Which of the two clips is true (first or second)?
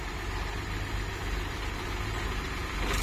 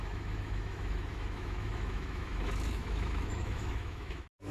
first